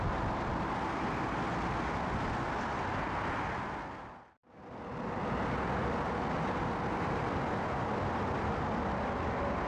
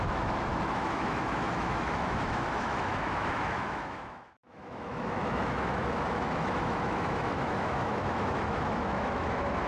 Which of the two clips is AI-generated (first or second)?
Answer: second